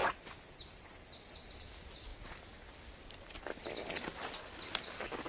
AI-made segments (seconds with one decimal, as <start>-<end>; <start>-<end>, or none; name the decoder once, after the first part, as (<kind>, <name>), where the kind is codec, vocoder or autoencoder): none